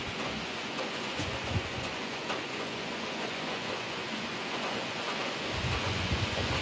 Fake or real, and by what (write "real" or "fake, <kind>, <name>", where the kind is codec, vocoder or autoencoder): fake, vocoder, Vocos